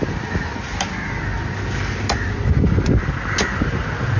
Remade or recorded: recorded